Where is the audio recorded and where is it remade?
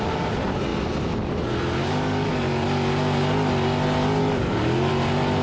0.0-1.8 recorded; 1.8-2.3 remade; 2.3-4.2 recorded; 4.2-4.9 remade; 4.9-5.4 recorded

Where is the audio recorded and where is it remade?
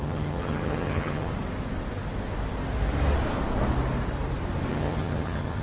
0.0-1.3 remade; 1.3-4.7 recorded; 4.7-5.6 remade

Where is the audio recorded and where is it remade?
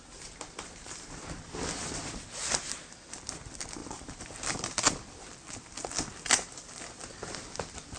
0.0-8.0 recorded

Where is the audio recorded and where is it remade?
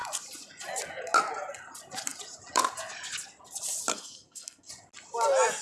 0.0-3.9 recorded; 3.9-4.7 remade; 4.7-5.6 recorded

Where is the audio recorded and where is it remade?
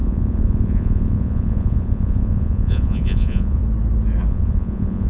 0.0-3.6 remade; 3.6-4.3 recorded; 4.3-5.1 remade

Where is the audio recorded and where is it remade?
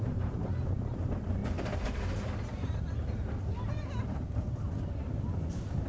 0.0-1.4 remade; 1.4-4.1 recorded; 4.1-5.9 remade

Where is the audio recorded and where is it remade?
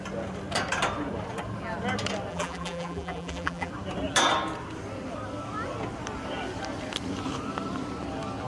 0.0-2.3 recorded; 2.3-3.7 remade; 3.7-8.5 recorded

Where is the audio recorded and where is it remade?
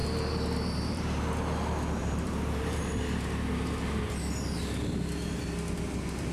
0.0-1.2 remade; 1.2-2.0 recorded; 2.0-4.0 remade; 4.0-6.3 recorded